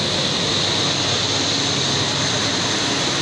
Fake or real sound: real